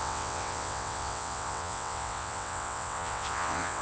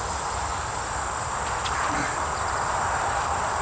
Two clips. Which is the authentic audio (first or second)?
second